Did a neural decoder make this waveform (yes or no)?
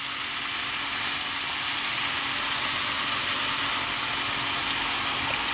no